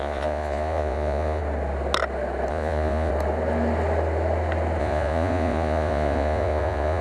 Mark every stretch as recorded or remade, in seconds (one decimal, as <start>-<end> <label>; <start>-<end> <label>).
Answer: 0.0-1.4 remade; 1.4-2.5 recorded; 2.5-3.1 remade; 3.1-4.8 recorded; 4.8-7.0 remade

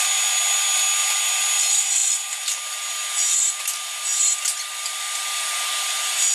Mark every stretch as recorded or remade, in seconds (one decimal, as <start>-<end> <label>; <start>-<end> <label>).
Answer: 0.0-6.3 recorded

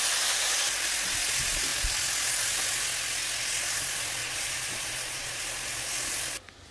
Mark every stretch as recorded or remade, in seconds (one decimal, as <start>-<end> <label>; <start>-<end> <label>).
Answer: 0.0-4.2 recorded; 4.2-5.4 remade; 5.4-6.7 recorded

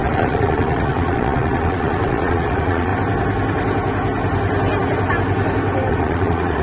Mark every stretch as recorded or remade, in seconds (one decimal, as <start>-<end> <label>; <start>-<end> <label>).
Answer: 0.0-2.9 remade; 2.9-5.9 recorded; 5.9-6.6 remade

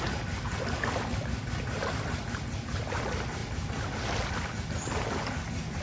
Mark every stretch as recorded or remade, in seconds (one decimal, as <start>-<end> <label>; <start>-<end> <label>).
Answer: 0.0-5.8 recorded

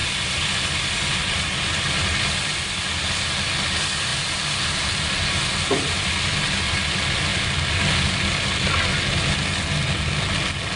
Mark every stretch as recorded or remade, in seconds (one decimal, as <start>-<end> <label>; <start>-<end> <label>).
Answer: 0.0-10.8 recorded

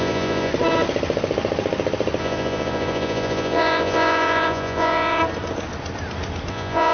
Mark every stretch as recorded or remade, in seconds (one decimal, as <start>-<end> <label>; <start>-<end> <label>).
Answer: 0.0-0.5 remade; 0.5-2.2 recorded; 2.2-5.2 remade; 5.2-6.5 recorded; 6.5-6.9 remade

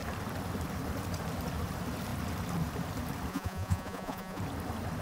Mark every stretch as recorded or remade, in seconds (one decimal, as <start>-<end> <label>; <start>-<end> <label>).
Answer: 0.0-3.3 recorded; 3.3-4.4 remade; 4.4-5.0 recorded